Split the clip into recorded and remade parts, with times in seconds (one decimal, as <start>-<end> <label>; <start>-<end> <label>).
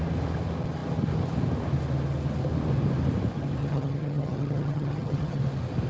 0.0-3.6 recorded; 3.6-5.4 remade; 5.4-5.9 recorded